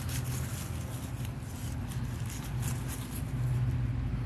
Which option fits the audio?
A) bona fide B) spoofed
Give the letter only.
A